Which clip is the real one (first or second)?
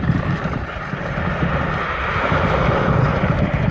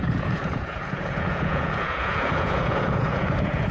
first